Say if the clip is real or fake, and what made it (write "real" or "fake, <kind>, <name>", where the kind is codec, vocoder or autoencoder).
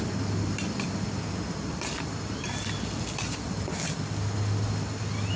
real